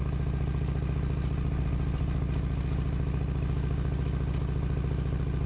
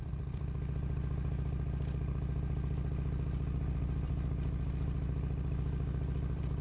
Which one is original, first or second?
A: first